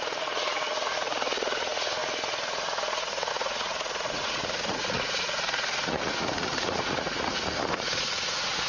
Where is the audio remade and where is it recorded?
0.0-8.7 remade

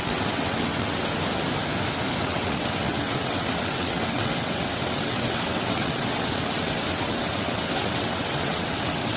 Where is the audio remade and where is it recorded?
0.0-1.1 remade; 1.1-2.2 recorded; 2.2-9.2 remade

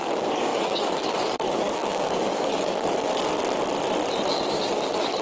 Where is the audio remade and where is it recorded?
0.0-3.1 remade; 3.1-4.3 recorded; 4.3-5.2 remade

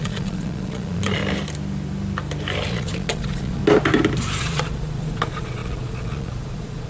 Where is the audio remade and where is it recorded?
0.0-1.2 remade; 1.2-2.7 recorded; 2.7-3.6 remade; 3.6-4.4 recorded; 4.4-6.9 remade

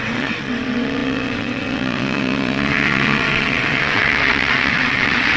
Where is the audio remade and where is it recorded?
0.0-5.4 remade

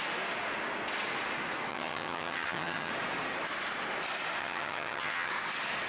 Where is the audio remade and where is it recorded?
0.0-1.7 recorded; 1.7-2.9 remade; 2.9-4.4 recorded; 4.4-5.3 remade; 5.3-5.9 recorded

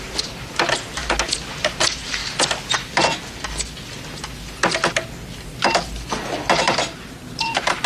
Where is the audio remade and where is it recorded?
0.0-1.0 remade; 1.0-1.5 recorded; 1.5-2.2 remade; 2.2-6.5 recorded; 6.5-7.9 remade